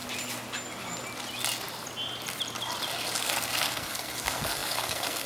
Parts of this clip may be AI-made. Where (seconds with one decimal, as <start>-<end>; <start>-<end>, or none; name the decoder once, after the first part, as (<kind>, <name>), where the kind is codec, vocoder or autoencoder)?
3.2-5.3 (codec, SNAC)